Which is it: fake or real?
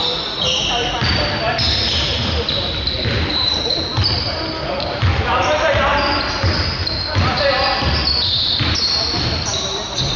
real